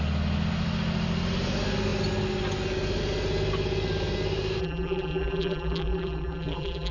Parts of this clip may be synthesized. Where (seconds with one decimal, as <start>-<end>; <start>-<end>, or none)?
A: 4.6-6.9